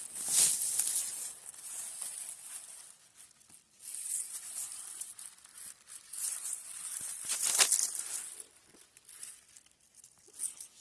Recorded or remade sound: recorded